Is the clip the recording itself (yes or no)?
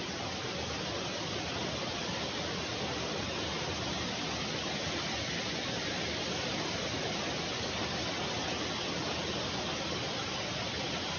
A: yes